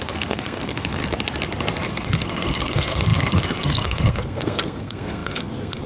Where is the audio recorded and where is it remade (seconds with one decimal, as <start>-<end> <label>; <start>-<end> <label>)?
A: 0.0-1.0 remade; 1.0-1.9 recorded; 1.9-5.9 remade